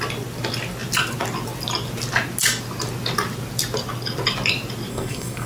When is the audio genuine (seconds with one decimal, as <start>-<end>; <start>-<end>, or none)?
0.0-4.9